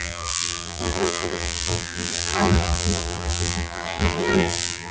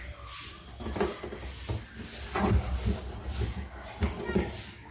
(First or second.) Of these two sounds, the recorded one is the second